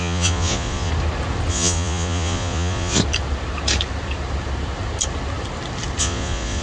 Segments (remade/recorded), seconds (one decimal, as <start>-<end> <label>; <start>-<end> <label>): 0.0-0.9 remade; 0.9-1.5 recorded; 1.5-3.0 remade; 3.0-6.0 recorded; 6.0-6.6 remade

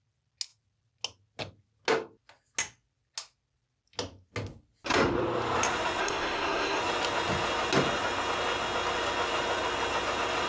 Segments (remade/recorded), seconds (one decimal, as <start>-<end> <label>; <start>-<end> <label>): 0.0-6.0 recorded; 6.0-6.8 remade; 6.8-10.5 recorded